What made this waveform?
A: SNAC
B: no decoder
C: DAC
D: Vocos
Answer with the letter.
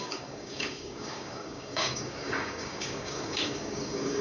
C